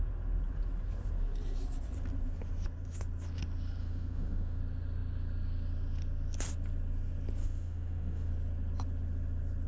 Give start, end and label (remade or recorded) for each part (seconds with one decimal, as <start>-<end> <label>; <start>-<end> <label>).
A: 0.0-3.8 recorded; 3.8-4.6 remade; 4.6-7.4 recorded; 7.4-8.3 remade; 8.3-9.7 recorded

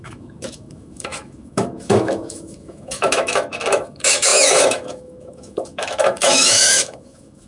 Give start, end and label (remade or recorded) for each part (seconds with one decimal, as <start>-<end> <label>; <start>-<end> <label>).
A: 0.0-7.5 remade

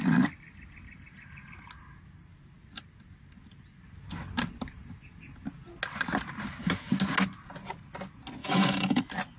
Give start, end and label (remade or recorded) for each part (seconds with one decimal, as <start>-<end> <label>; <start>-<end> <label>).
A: 0.0-8.4 recorded; 8.4-9.0 remade; 9.0-9.4 recorded

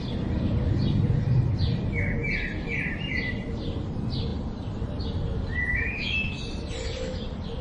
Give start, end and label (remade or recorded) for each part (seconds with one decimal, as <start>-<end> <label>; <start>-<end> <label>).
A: 0.0-5.7 recorded; 5.7-6.4 remade; 6.4-7.6 recorded

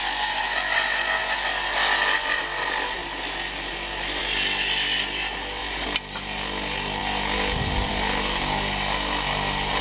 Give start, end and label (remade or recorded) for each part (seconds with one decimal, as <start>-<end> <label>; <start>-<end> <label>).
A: 0.0-9.8 recorded

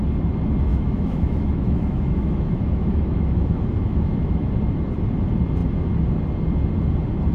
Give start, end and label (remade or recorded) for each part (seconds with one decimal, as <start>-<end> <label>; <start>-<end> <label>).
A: 0.0-0.7 recorded; 0.7-4.5 remade; 4.5-7.3 recorded